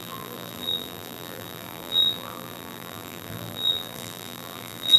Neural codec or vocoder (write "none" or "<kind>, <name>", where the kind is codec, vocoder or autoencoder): vocoder, BigVGAN v2